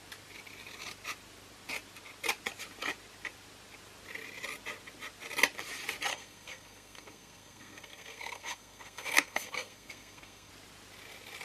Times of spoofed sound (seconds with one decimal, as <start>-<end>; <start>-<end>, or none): 6.1-10.5